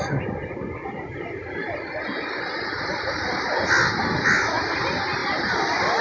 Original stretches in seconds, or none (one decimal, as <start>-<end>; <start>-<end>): 0.0-6.0